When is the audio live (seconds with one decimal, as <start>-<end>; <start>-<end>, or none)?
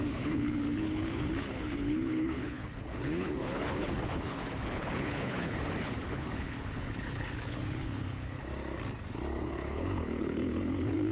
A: 8.4-9.4